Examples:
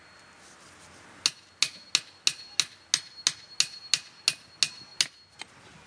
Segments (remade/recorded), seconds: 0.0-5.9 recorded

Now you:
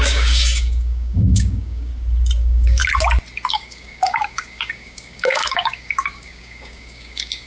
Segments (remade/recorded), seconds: 0.0-1.9 remade; 1.9-2.4 recorded; 2.4-2.8 remade; 2.8-3.5 recorded; 3.5-7.5 remade

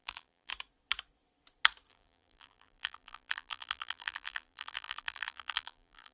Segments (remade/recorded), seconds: 0.0-0.5 remade; 0.5-1.9 recorded; 1.9-6.1 remade

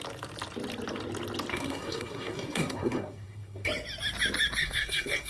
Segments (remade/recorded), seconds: 0.0-1.5 recorded; 1.5-3.7 remade; 3.7-4.6 recorded; 4.6-5.3 remade